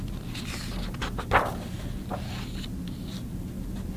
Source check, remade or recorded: recorded